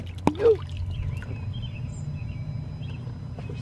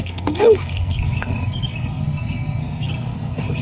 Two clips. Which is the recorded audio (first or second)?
first